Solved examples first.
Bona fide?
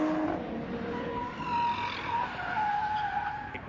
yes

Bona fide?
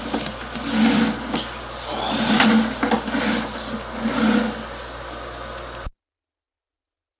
yes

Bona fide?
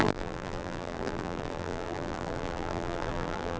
no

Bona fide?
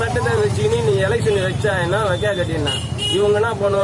no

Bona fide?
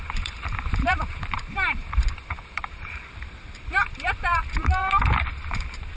no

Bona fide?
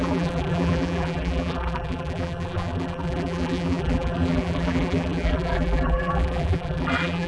no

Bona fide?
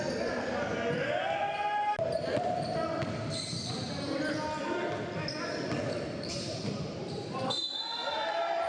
yes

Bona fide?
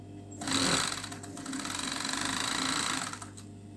yes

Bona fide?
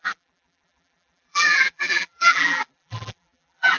no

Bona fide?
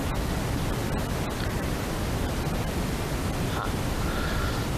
yes